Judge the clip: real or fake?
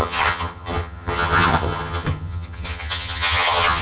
fake